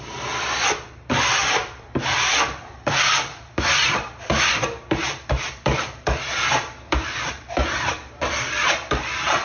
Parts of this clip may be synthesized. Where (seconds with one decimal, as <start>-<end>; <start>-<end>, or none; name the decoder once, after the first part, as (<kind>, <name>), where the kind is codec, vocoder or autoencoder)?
0.0-9.4 (vocoder, BigVGAN v2)